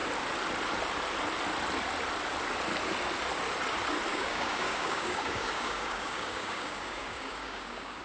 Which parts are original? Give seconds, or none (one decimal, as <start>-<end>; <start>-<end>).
0.0-4.1